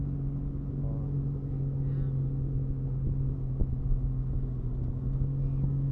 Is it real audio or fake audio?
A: real